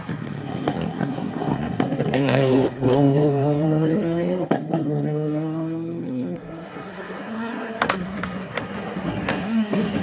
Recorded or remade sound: remade